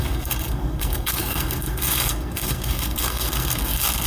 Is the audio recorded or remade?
remade